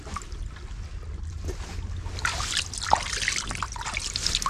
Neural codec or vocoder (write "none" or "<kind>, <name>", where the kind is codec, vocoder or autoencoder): none